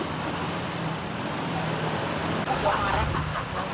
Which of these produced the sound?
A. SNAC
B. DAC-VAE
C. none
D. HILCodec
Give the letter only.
C